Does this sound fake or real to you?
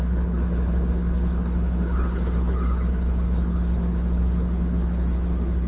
fake